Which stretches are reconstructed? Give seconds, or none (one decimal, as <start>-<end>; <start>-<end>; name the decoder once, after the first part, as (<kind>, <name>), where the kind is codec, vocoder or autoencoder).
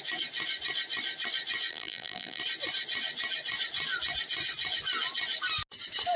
1.7-2.4 (vocoder, BigVGAN v2)